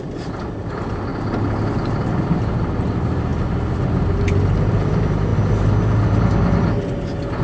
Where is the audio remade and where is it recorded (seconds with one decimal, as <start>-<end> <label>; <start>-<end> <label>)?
0.0-7.4 recorded